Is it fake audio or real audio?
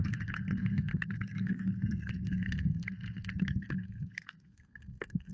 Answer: fake